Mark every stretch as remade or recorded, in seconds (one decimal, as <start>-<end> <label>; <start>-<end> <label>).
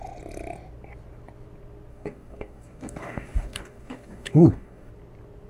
0.0-1.9 recorded; 1.9-4.9 remade; 4.9-5.5 recorded